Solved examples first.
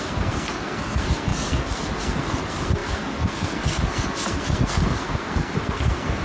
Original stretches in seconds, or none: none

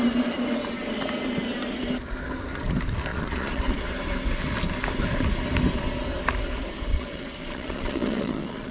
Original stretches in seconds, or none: 0.0-3.1; 3.8-6.9

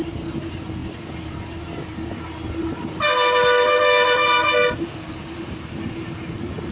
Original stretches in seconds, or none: 0.0-6.7